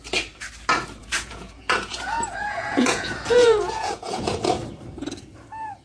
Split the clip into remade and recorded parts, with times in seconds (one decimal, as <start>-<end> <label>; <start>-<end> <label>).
0.0-1.0 recorded; 1.0-4.5 remade; 4.5-5.8 recorded